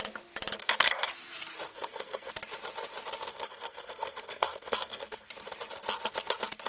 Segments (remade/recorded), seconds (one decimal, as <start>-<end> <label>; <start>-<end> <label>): 0.0-0.6 recorded; 0.6-1.1 remade; 1.1-1.7 recorded; 1.7-2.3 remade; 2.3-3.3 recorded; 3.3-5.3 remade; 5.3-6.7 recorded